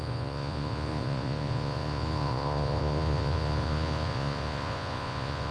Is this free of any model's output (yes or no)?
no